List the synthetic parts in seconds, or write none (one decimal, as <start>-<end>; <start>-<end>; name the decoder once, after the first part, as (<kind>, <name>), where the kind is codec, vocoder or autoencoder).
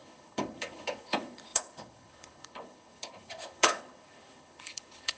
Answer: 0.0-5.2 (codec, HILCodec)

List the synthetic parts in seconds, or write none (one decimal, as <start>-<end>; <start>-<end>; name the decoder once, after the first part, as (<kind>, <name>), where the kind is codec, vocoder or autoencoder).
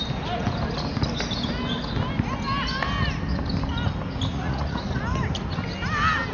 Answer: 4.3-5.0 (vocoder, Vocos)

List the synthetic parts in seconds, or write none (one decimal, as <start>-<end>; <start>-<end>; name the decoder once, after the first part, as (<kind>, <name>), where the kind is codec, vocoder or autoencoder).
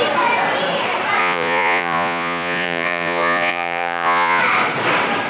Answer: 1.2-4.4 (vocoder, Vocos)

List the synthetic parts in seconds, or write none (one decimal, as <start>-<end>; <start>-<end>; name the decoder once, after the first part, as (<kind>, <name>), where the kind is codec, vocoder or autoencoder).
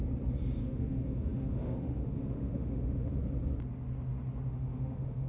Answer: 0.6-3.2 (autoencoder, DAC-VAE); 4.5-5.3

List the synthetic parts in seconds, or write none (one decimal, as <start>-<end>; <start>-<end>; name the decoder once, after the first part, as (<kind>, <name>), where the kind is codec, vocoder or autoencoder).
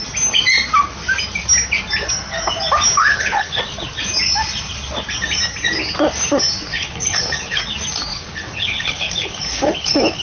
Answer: 3.0-3.6 (codec, HILCodec); 6.7-7.6; 8.1-10.2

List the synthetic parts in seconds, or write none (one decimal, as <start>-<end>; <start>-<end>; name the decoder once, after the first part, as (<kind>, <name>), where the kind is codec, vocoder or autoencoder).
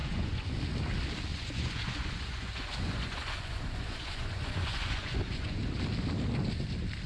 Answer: 0.0-0.5 (vocoder, Vocos); 1.3-5.6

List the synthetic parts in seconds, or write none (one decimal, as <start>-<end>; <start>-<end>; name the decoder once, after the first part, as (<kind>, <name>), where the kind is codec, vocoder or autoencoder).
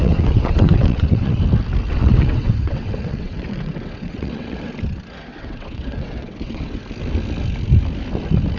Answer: 0.0-1.4 (vocoder, WaveNeXt); 1.9-4.7; 5.3-6.8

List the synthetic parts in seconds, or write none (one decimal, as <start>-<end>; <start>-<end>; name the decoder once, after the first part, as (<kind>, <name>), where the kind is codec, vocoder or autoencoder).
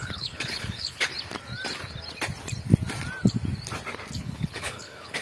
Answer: 0.0-1.1 (codec, HILCodec); 4.2-5.2